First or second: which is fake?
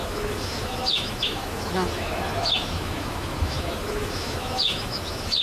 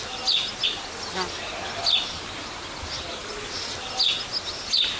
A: first